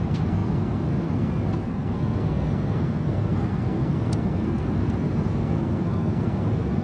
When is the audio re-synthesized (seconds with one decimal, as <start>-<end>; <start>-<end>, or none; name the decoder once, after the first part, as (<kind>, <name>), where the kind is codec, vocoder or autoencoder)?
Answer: 0.0-6.8 (codec, SNAC)